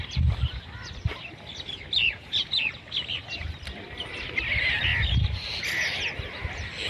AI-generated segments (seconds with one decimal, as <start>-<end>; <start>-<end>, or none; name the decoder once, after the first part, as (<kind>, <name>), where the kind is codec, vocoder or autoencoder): 2.0-2.7 (vocoder, Vocos)